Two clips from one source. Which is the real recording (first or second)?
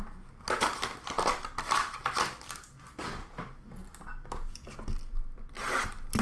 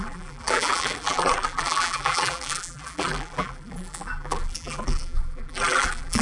first